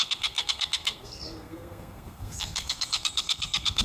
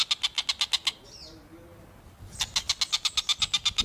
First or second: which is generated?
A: first